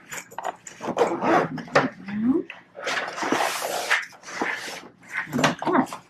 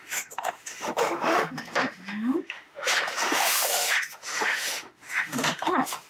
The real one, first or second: first